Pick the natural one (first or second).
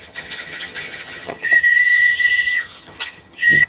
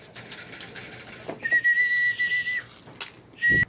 second